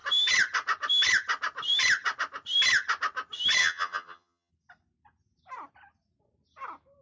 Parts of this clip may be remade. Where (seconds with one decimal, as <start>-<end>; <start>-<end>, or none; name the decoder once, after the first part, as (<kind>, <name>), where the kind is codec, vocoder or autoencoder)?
3.6-4.5 (vocoder, HiFi-GAN)